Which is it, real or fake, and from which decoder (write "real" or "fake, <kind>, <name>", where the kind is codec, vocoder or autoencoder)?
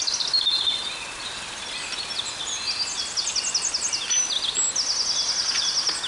real